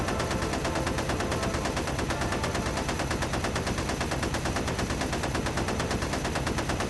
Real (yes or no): yes